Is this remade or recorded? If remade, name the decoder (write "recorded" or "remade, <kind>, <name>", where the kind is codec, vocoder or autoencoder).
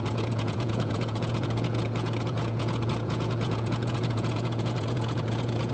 remade, vocoder, Vocos